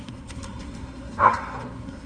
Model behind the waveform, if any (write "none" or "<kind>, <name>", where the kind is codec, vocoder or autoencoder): codec, SNAC